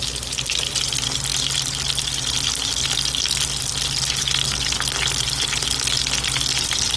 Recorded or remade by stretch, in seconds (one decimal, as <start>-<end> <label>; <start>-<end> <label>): 0.0-7.0 recorded